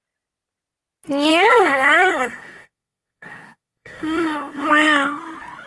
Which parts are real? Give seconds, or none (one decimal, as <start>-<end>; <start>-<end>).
0.0-1.3; 4.7-5.7